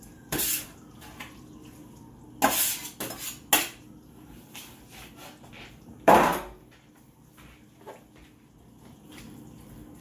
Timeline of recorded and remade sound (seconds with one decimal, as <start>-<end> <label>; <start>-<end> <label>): 0.0-1.8 remade; 1.8-5.7 recorded; 5.7-6.3 remade; 6.3-9.1 recorded; 9.1-10.0 remade